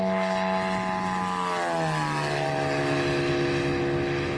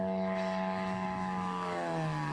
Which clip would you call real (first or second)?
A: first